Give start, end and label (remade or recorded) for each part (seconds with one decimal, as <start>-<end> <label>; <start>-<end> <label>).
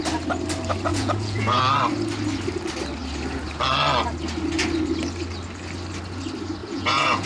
0.0-0.9 recorded; 0.9-1.6 remade; 1.6-6.6 recorded; 6.6-7.3 remade